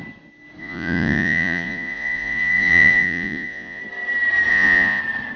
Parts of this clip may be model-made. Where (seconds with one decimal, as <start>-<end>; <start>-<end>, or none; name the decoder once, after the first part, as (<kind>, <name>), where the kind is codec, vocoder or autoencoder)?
0.6-3.8 (vocoder, Vocos); 4.5-5.0